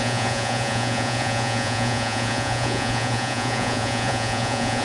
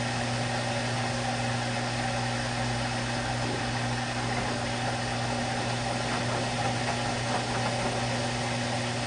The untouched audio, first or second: second